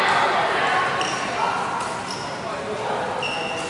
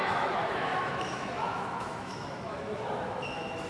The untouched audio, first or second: first